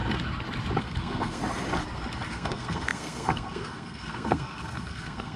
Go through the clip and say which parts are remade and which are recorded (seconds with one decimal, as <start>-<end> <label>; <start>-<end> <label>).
0.0-0.8 recorded; 0.8-1.4 remade; 1.4-2.3 recorded; 2.3-5.4 remade